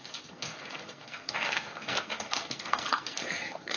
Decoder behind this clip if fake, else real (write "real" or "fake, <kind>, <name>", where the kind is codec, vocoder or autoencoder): fake, codec, SNAC